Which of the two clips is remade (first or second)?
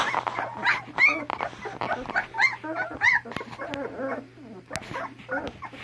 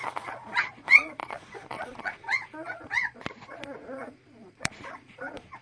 second